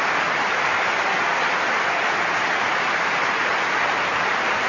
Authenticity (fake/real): real